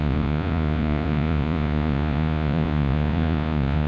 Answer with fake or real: fake